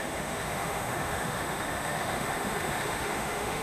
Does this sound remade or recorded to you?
remade